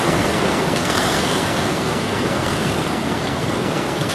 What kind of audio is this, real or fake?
fake